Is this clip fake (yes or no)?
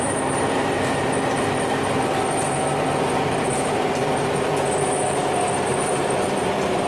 yes